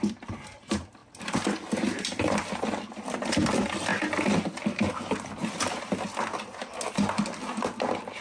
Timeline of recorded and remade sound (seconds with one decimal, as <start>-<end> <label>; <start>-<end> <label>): 0.0-8.2 recorded